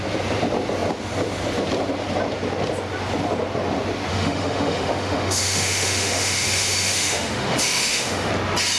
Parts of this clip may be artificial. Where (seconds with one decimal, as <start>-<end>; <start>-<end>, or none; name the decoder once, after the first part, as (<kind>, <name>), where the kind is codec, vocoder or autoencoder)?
4.1-8.3 (autoencoder, DAC-VAE)

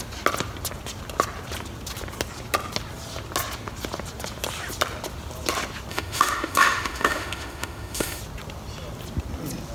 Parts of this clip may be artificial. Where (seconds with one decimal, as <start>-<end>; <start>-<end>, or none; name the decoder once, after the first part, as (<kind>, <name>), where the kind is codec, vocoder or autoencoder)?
5.9-8.2 (autoencoder, DAC-VAE)

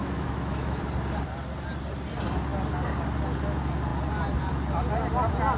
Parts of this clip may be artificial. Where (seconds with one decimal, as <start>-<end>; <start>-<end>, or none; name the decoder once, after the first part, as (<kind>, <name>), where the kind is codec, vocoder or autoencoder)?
0.0-0.8 (autoencoder, DAC-VAE)

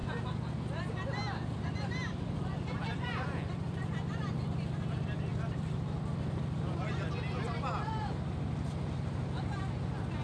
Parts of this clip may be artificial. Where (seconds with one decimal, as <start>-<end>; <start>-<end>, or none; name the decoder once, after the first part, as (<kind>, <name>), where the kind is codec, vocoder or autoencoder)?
none

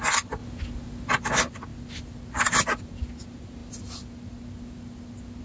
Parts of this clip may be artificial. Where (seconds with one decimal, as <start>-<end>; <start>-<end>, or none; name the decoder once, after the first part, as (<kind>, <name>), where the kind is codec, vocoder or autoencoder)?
none

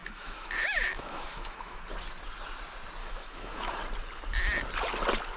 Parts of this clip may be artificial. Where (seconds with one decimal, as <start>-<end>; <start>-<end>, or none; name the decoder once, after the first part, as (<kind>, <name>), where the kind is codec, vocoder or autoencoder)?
0.0-1.8 (autoencoder, DAC-VAE); 3.0-3.8